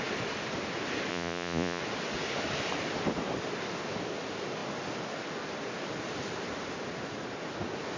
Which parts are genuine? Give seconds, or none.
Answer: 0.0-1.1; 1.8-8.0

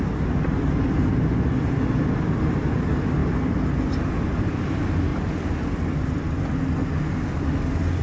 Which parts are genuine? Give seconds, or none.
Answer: 0.0-8.0